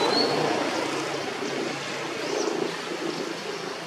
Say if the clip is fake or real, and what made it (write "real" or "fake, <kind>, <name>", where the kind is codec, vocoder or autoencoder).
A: real